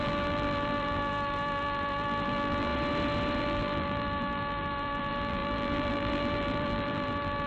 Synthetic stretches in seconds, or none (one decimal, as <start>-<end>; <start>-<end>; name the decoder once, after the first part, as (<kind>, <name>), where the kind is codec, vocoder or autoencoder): 0.0-2.7 (vocoder, BigVGAN v2); 3.4-7.5

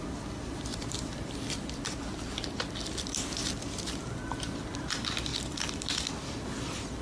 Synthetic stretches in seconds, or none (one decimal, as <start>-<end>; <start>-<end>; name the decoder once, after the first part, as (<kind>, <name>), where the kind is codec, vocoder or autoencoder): 0.7-3.5 (vocoder, BigVGAN v2); 5.3-6.1